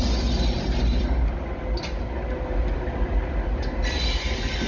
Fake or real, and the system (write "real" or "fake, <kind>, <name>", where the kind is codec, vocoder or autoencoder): real